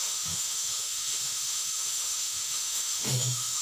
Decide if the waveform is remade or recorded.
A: remade